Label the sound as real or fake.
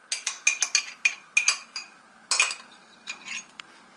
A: real